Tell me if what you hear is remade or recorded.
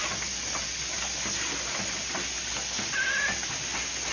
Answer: recorded